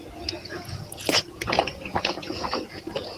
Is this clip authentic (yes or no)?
no